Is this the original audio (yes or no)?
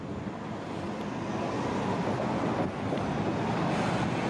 yes